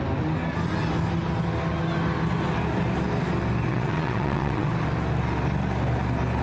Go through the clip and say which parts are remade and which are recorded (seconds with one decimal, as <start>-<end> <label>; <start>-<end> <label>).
0.0-3.7 recorded; 3.7-4.7 remade; 4.7-6.4 recorded